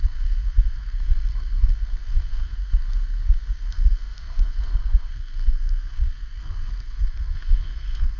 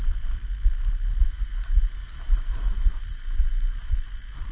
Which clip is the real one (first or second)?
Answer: second